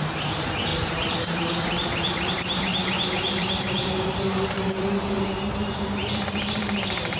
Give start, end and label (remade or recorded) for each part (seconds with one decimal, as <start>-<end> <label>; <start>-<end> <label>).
0.0-7.2 remade